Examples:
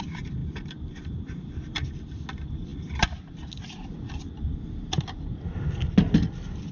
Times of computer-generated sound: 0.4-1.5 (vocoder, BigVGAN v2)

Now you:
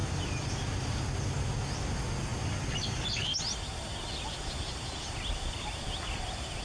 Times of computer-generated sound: 0.0-1.0 (vocoder, BigVGAN v2)

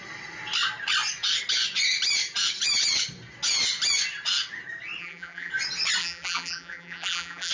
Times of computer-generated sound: 5.0-5.5 (vocoder, BigVGAN v2); 6.0-7.5

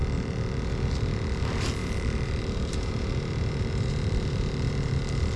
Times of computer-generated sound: 1.8-5.0 (vocoder, BigVGAN v2)

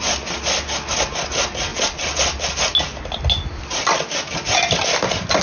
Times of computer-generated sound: 1.7-2.6 (vocoder, BigVGAN v2)

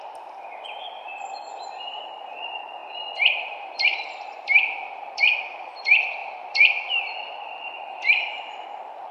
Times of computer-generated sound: 0.0-9.1 (vocoder, BigVGAN v2)

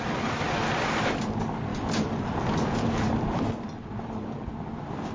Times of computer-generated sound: 1.7-4.5 (vocoder, BigVGAN v2)

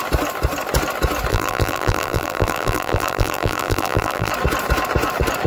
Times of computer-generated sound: 1.3-4.3 (vocoder, BigVGAN v2)